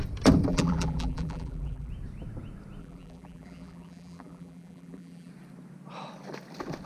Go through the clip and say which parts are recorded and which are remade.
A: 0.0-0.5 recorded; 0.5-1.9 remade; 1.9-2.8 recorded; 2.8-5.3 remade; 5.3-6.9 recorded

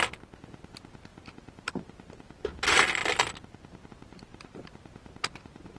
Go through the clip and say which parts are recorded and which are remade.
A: 0.0-1.1 recorded; 1.1-2.4 remade; 2.4-4.3 recorded; 4.3-5.3 remade; 5.3-5.8 recorded

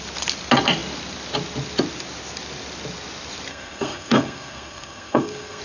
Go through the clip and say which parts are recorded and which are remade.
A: 0.0-3.5 recorded; 3.5-5.6 remade

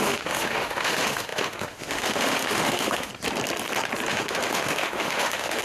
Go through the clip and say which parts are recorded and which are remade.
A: 0.0-3.1 remade; 3.1-4.1 recorded; 4.1-5.6 remade

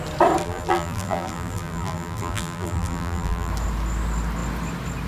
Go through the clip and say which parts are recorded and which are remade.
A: 0.0-0.4 recorded; 0.4-3.5 remade; 3.5-5.1 recorded